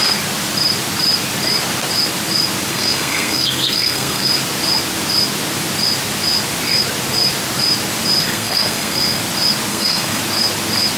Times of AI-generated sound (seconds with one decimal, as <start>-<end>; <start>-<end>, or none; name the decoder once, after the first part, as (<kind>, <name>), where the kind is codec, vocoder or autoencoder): 2.7-4.3 (codec, SNAC); 8.2-9.2; 9.7-10.2